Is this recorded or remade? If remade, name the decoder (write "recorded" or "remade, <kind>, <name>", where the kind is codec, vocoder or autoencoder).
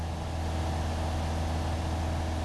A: recorded